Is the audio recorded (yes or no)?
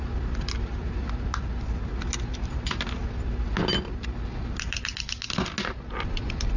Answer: yes